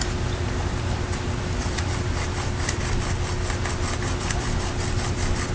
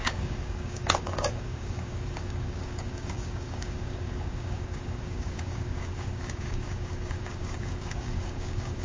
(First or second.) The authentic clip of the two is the first